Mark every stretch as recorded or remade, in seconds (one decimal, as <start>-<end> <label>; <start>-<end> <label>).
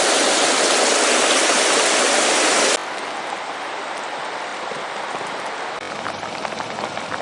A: 0.0-7.2 recorded